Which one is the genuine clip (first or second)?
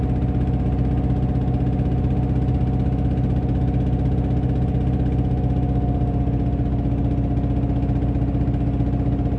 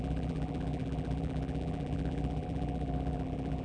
first